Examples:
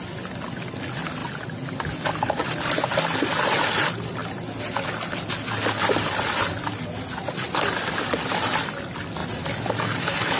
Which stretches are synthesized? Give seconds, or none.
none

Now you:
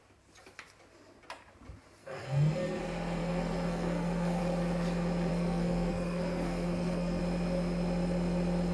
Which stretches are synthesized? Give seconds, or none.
2.0-2.8 (codec, SNAC); 3.2-4.4; 5.3-7.2